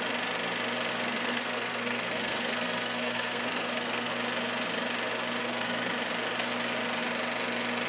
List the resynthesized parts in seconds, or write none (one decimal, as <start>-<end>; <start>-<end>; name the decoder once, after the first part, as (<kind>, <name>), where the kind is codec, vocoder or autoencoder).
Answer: 0.9-4.1 (codec, SNAC); 5.4-5.9